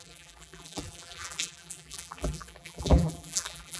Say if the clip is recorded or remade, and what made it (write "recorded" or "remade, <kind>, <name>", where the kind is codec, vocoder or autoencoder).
remade, vocoder, BigVGAN v2